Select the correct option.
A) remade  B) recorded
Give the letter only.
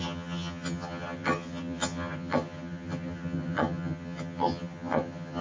A